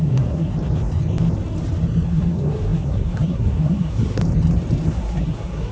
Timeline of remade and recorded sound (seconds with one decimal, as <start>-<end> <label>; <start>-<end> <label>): 0.0-0.5 remade; 0.5-2.1 recorded; 2.1-4.2 remade; 4.2-4.9 recorded; 4.9-5.7 remade